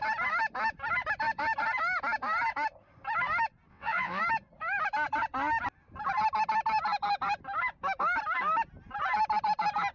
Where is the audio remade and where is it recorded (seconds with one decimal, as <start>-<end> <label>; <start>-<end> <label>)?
0.0-3.7 recorded; 3.7-4.2 remade; 4.2-9.9 recorded